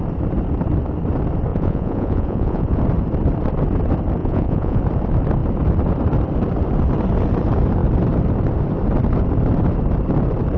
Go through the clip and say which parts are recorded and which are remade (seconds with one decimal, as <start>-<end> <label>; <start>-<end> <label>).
0.0-1.5 recorded; 1.5-2.8 remade; 2.8-4.2 recorded; 4.2-4.8 remade; 4.8-10.6 recorded